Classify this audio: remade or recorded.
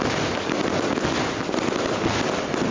recorded